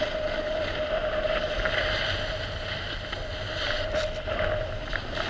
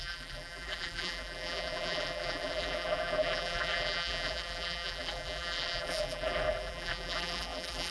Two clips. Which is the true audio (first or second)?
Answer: first